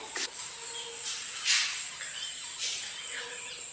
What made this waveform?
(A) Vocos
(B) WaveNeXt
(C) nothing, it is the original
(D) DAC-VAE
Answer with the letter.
C